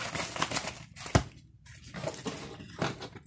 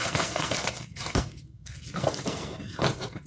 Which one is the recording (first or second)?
first